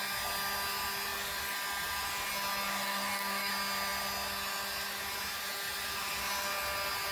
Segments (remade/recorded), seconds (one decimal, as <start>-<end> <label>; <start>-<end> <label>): 0.0-2.7 recorded; 2.7-3.5 remade; 3.5-7.1 recorded